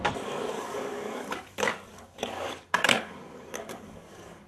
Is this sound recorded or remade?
remade